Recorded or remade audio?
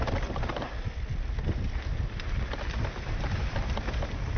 recorded